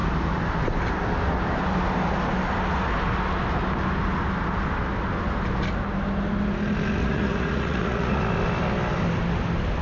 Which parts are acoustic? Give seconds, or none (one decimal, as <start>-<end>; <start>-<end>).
0.0-7.0; 8.2-9.8